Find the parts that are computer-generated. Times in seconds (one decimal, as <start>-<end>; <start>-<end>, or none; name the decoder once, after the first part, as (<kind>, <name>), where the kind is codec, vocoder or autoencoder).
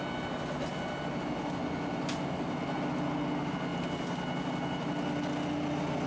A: none